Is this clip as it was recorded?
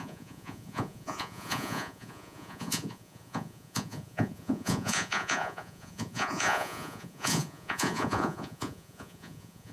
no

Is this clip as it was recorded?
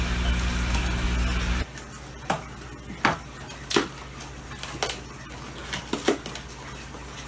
yes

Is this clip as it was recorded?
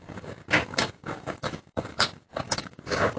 no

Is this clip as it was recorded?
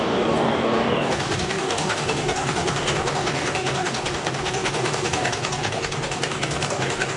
no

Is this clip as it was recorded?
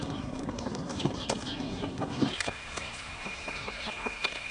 no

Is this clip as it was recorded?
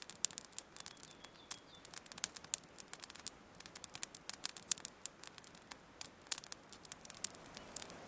yes